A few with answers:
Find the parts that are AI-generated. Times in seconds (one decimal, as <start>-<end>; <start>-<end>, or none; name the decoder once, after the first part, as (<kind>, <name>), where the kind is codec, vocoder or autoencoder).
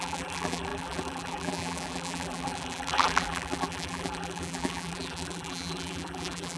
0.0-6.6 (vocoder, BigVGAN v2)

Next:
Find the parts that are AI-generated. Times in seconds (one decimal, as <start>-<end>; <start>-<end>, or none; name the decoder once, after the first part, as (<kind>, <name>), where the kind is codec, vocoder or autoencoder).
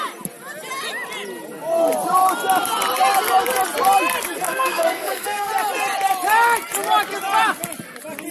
4.4-5.5 (codec, SNAC)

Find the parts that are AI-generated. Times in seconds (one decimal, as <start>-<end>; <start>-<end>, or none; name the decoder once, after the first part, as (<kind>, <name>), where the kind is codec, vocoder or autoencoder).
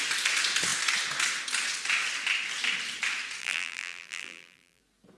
3.4-4.8 (vocoder, BigVGAN v2)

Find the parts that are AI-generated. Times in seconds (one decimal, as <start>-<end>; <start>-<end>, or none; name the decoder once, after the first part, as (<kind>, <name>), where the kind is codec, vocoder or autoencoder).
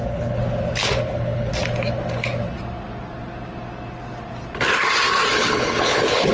0.0-0.4 (codec, HILCodec); 1.0-1.5; 5.3-6.3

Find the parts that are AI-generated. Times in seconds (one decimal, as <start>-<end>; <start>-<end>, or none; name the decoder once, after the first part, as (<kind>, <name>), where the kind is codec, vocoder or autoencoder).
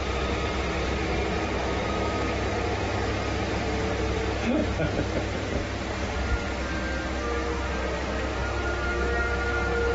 1.6-2.5 (autoencoder, DAC-VAE)